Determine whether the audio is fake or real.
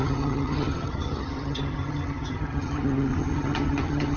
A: fake